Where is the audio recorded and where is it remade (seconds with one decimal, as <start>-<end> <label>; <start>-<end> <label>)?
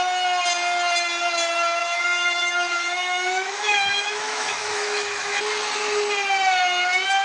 0.0-1.8 recorded; 1.8-5.4 remade; 5.4-7.2 recorded